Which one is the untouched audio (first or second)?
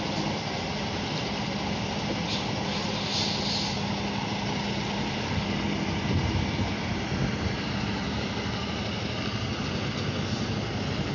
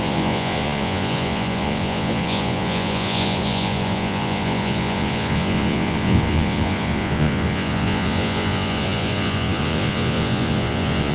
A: first